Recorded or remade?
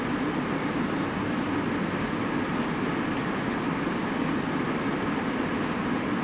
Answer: recorded